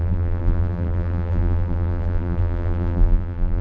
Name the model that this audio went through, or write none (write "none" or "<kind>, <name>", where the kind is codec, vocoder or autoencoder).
vocoder, BigVGAN v2